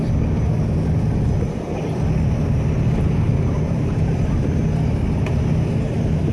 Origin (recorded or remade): recorded